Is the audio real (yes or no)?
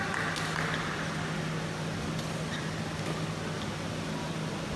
yes